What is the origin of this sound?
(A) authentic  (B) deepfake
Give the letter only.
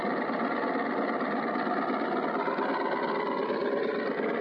A